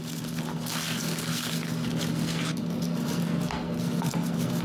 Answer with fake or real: fake